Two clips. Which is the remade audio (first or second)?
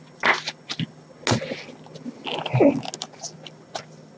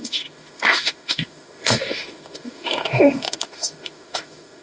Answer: second